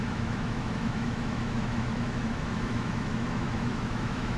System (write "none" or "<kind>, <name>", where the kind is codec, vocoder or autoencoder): autoencoder, DAC-VAE